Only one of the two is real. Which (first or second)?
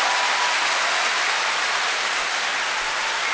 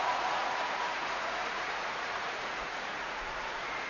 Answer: first